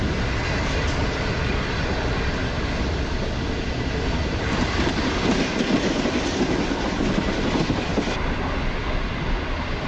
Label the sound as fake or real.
real